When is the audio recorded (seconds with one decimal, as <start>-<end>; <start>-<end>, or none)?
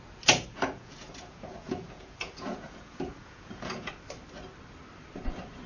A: 0.0-0.5; 3.9-5.7